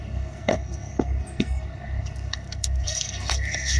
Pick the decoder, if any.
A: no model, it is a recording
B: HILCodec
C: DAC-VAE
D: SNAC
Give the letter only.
D